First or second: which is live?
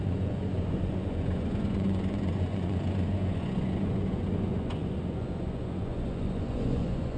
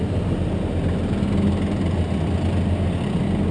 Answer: second